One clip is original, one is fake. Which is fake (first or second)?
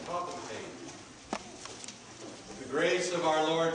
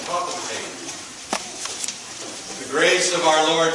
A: second